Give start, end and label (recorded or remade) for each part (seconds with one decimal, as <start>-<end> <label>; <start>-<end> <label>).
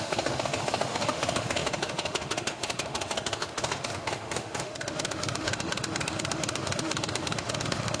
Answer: 0.0-8.0 remade